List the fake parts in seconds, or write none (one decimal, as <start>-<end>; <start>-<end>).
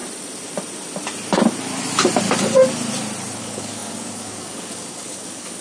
3.4-5.6